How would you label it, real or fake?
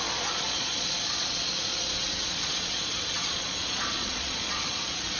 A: fake